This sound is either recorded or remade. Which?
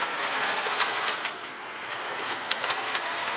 remade